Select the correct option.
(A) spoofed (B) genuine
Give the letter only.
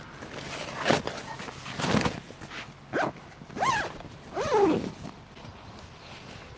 B